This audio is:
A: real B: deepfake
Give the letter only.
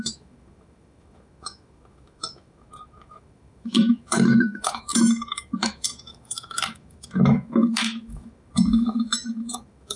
B